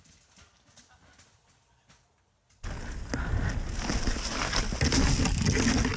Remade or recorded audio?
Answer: recorded